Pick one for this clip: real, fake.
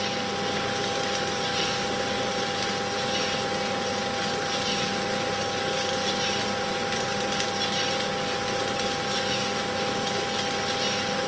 real